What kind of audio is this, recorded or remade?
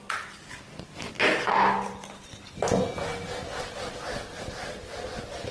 recorded